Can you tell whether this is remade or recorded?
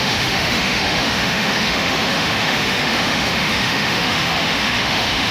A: remade